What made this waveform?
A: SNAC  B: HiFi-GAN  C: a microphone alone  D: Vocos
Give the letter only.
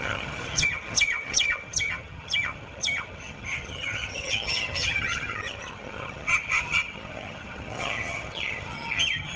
B